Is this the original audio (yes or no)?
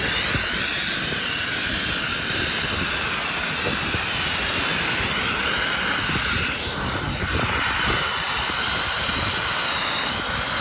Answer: yes